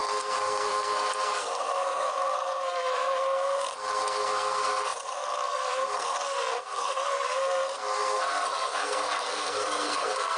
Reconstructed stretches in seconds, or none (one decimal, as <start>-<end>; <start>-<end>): 0.0-10.4